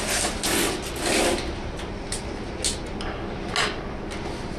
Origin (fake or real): real